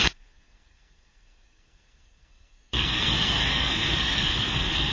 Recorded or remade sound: remade